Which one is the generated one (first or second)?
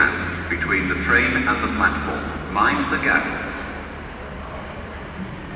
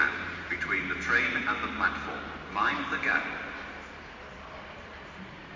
second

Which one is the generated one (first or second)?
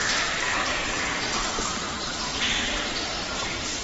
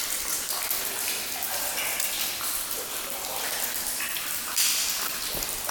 first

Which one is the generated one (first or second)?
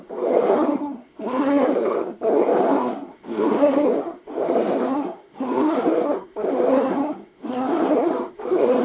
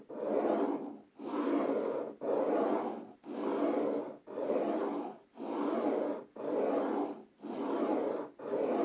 first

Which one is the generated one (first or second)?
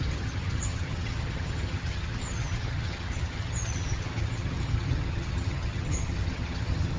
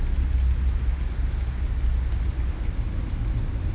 first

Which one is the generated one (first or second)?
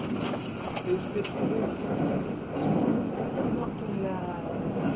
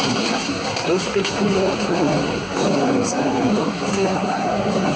second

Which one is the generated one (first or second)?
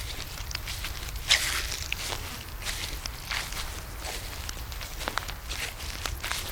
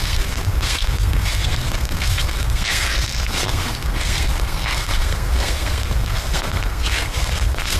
second